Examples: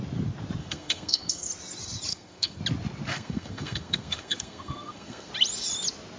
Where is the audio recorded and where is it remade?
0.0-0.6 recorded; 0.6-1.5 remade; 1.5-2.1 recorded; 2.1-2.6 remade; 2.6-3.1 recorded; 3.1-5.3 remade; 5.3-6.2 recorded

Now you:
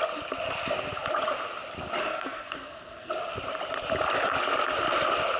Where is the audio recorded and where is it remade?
0.0-2.0 recorded; 2.0-3.1 remade; 3.1-5.4 recorded

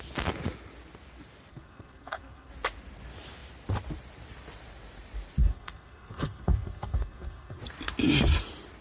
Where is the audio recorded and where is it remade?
0.0-1.5 recorded; 1.5-2.5 remade; 2.5-5.4 recorded; 5.4-7.6 remade; 7.6-8.8 recorded

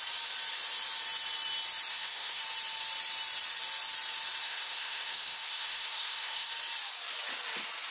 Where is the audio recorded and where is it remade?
0.0-1.9 recorded; 1.9-2.4 remade; 2.4-4.4 recorded; 4.4-6.5 remade; 6.5-7.9 recorded

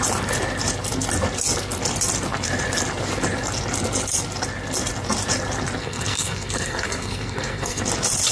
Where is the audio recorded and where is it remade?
0.0-5.8 recorded; 5.8-7.8 remade; 7.8-8.3 recorded